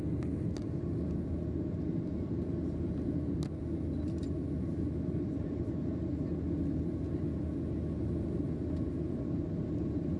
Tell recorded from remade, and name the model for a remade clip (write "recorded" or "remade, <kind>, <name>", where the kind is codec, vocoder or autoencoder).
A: recorded